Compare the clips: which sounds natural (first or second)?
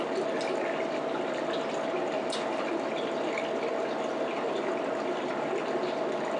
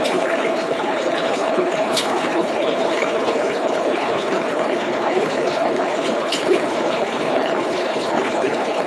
first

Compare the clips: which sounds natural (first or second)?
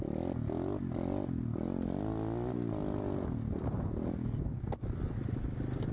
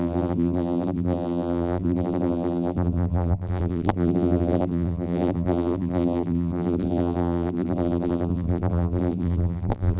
first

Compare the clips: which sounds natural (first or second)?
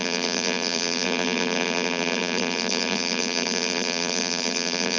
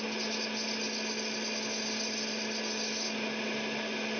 second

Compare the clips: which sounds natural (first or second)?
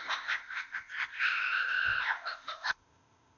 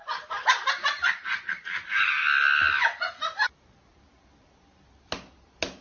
second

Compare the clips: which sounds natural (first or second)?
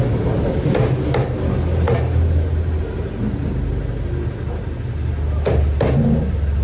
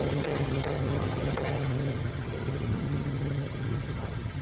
first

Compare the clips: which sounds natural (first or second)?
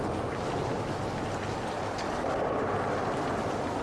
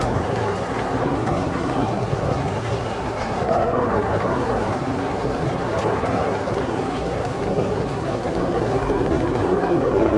first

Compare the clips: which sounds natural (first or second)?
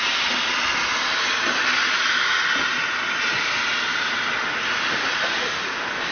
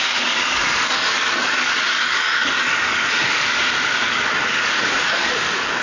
first